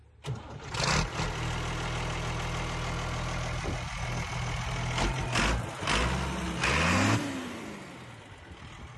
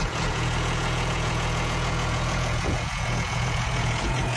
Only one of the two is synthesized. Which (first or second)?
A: second